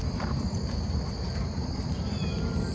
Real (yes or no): yes